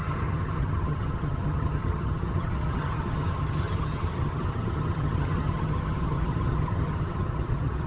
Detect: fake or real fake